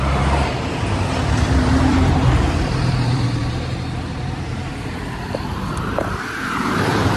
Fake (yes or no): yes